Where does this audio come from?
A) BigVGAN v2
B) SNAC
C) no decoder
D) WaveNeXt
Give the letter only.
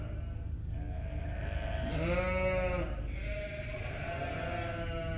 C